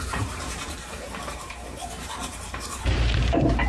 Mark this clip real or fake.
fake